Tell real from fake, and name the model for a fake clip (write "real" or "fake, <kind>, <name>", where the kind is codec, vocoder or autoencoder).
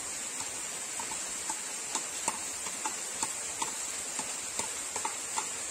real